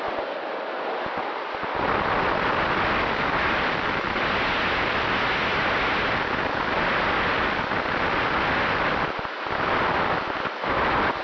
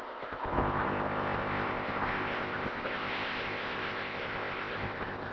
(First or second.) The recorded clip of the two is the first